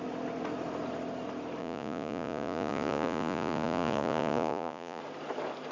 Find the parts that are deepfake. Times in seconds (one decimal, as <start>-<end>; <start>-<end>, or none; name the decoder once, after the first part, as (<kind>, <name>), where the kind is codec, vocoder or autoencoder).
1.6-5.0 (vocoder, Vocos)